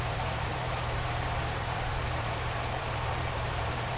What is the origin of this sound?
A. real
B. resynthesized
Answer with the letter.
B